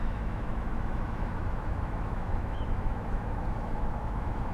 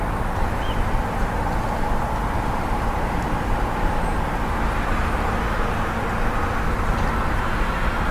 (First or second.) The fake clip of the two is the first